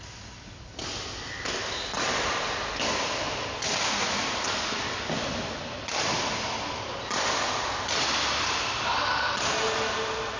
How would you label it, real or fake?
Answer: real